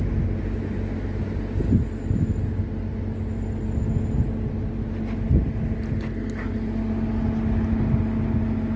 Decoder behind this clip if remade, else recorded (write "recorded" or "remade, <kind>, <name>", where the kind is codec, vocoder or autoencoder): recorded